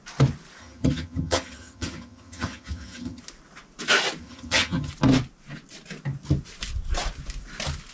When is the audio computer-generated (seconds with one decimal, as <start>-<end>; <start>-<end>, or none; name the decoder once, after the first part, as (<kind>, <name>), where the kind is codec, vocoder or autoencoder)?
0.6-3.2 (vocoder, HiFi-GAN); 4.2-4.9